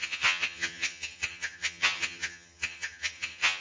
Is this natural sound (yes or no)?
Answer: no